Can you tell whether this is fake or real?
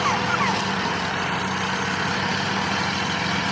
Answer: real